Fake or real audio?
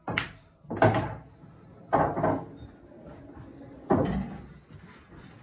real